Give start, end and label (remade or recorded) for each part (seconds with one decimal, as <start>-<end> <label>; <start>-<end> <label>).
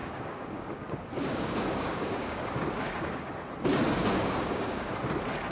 0.0-3.3 remade; 3.3-4.0 recorded; 4.0-4.9 remade; 4.9-5.5 recorded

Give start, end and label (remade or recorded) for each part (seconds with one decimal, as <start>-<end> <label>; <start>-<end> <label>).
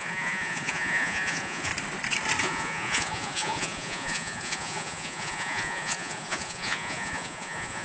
0.0-1.7 remade; 1.7-2.4 recorded; 2.4-7.8 remade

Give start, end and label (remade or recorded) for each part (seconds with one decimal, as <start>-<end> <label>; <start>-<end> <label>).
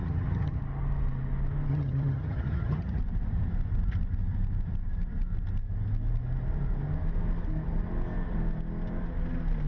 0.0-0.6 remade; 0.6-1.7 recorded; 1.7-3.0 remade; 3.0-9.7 recorded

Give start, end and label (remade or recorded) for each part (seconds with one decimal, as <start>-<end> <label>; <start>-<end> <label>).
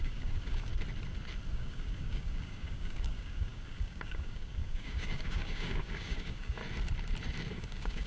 0.0-0.7 remade; 0.7-1.5 recorded; 1.5-6.6 remade; 6.6-7.5 recorded; 7.5-8.1 remade